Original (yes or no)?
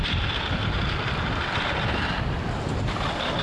yes